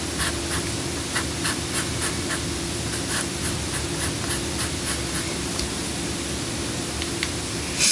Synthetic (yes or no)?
no